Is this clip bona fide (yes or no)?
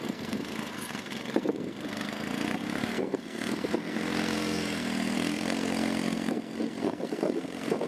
no